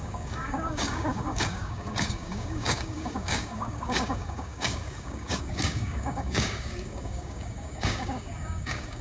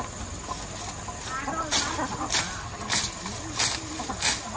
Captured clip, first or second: second